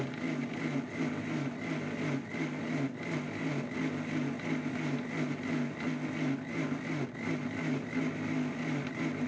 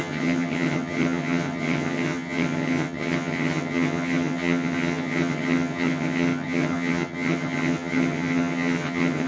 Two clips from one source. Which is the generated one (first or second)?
second